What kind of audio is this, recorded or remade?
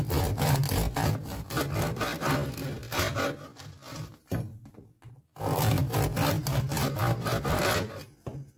recorded